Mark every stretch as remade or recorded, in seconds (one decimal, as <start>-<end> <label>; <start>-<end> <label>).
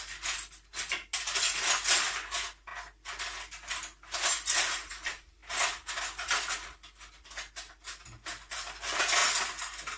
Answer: 0.0-10.0 recorded